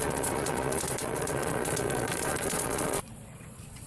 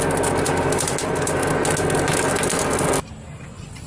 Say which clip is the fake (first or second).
first